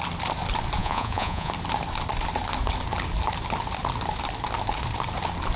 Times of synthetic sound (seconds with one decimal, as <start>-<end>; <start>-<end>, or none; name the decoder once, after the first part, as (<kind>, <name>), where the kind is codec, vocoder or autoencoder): 0.8-1.5 (vocoder, Vocos)